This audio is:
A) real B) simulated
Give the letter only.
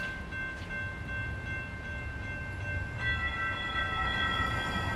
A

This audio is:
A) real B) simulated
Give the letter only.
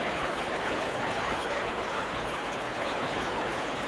B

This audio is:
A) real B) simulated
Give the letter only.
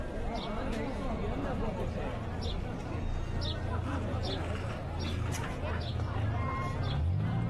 A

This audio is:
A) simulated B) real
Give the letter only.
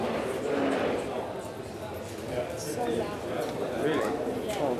A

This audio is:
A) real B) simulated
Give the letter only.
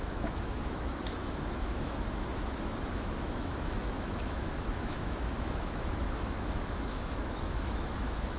B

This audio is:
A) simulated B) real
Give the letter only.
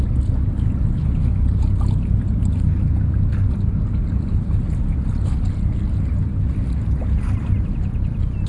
B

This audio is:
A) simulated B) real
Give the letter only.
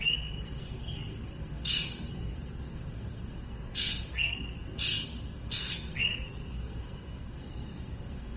A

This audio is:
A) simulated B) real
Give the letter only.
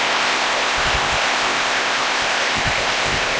A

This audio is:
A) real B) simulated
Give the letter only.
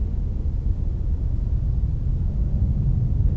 A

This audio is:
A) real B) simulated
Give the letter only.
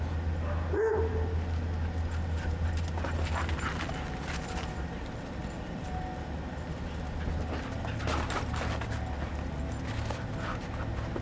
A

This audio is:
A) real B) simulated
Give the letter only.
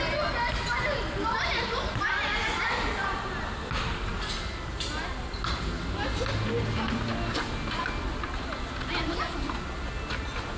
A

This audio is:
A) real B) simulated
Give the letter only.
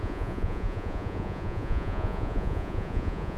B